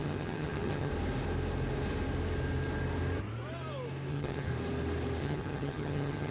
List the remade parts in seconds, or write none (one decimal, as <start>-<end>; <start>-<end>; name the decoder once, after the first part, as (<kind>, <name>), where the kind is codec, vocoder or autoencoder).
0.0-0.9 (vocoder, HiFi-GAN); 4.1-4.5; 5.2-6.3